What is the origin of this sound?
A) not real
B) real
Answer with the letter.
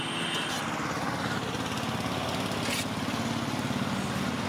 B